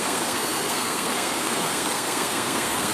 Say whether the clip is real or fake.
fake